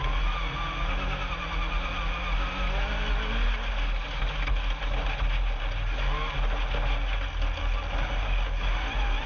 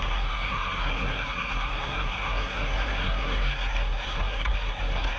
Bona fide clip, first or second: first